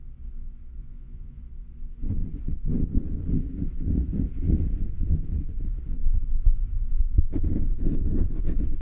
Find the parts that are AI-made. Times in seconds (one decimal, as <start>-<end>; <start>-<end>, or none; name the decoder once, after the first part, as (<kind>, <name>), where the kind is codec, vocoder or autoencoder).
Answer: 0.8-1.4 (vocoder, Vocos)